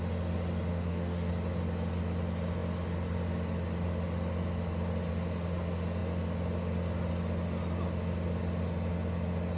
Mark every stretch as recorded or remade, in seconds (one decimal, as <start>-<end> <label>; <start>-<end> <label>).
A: 0.0-0.7 recorded; 0.7-1.3 remade; 1.3-9.6 recorded